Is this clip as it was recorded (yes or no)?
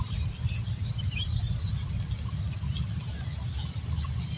yes